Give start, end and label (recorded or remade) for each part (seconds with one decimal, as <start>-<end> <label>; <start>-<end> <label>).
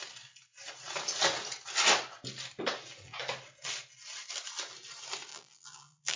0.0-5.3 recorded; 5.3-6.2 remade